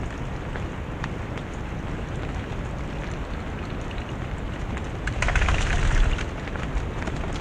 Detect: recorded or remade recorded